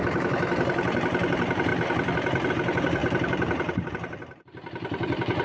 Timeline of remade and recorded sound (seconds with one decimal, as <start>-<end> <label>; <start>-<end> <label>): 0.0-1.7 remade; 1.7-2.5 recorded; 2.5-5.4 remade